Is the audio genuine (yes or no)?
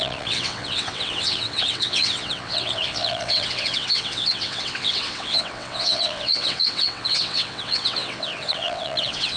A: no